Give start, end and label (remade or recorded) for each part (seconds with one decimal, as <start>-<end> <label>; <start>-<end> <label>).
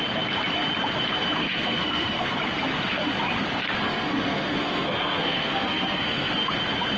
0.0-1.4 recorded; 1.4-2.4 remade; 2.4-3.8 recorded; 3.8-6.3 remade; 6.3-7.0 recorded